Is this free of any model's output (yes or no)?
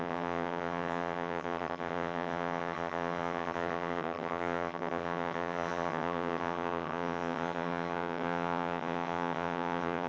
no